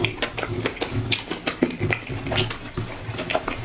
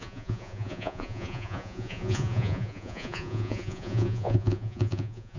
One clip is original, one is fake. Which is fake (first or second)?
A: second